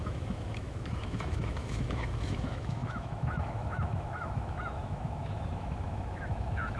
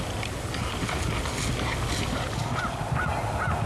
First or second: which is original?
second